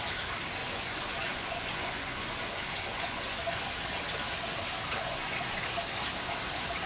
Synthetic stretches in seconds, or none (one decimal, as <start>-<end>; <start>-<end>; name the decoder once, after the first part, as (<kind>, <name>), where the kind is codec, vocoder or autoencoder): 0.6-3.7 (vocoder, Vocos); 5.0-5.6